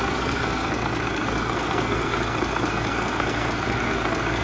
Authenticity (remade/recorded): remade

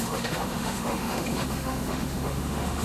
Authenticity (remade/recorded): remade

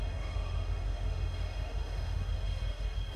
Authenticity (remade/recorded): remade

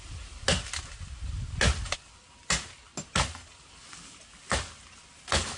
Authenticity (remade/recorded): recorded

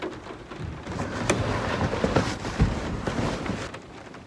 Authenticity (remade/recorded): recorded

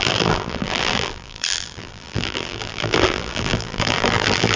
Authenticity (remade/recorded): remade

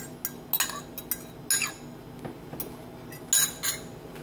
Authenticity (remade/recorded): recorded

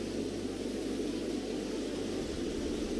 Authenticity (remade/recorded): recorded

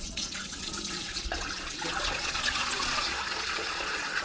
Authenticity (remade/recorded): remade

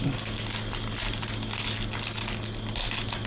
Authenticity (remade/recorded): recorded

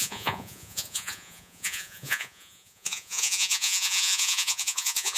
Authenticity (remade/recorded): remade